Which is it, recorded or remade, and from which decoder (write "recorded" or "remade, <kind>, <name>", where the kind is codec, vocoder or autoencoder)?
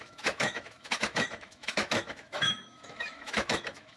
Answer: remade, autoencoder, DAC-VAE